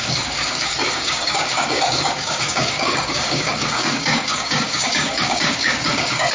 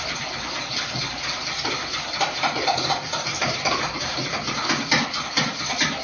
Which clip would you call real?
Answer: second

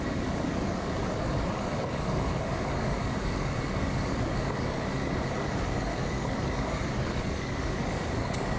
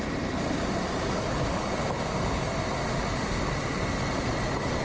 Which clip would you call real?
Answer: second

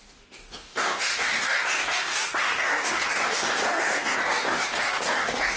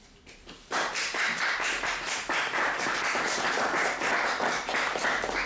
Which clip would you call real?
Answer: second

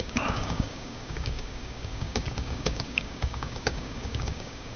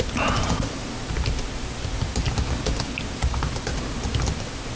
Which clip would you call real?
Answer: second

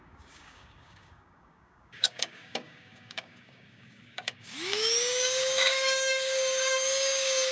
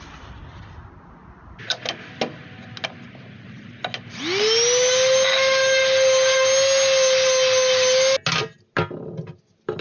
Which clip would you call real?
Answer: second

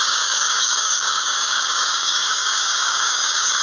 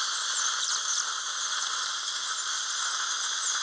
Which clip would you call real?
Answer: second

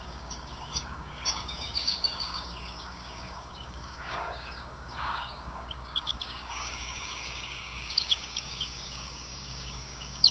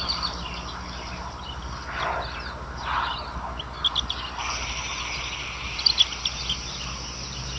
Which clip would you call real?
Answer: second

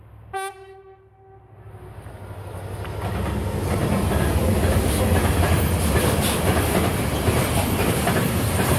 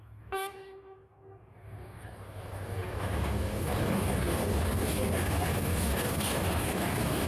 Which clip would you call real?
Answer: first